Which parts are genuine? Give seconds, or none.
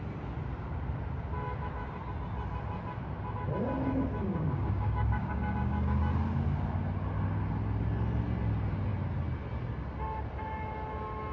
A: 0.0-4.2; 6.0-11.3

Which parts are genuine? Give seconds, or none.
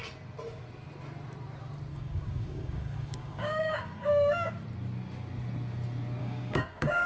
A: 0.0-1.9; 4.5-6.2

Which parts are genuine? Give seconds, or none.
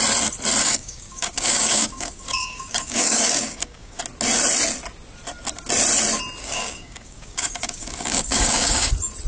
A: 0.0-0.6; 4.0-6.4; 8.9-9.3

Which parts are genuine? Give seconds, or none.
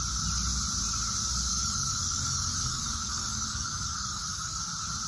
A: 0.0-1.5; 4.6-5.1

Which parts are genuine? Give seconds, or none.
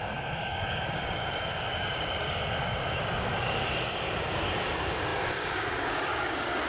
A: none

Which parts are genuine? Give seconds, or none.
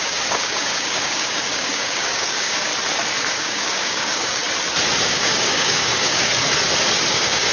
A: 2.7-3.3; 4.4-5.0; 6.3-7.1